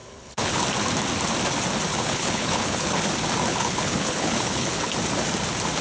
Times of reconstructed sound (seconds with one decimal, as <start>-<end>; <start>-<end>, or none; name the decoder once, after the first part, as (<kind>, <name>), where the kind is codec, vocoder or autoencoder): 0.0-0.6 (codec, HILCodec); 1.9-3.0; 3.5-4.9